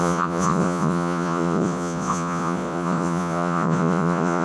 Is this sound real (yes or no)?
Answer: no